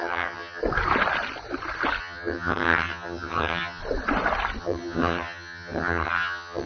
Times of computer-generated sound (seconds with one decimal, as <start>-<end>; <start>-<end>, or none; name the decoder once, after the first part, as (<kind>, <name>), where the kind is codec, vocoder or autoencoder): 0.0-0.6 (vocoder, HiFi-GAN); 2.0-3.8; 4.6-6.7